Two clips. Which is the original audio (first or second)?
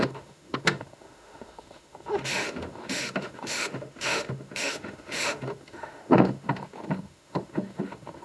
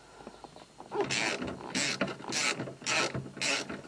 second